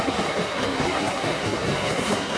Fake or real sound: fake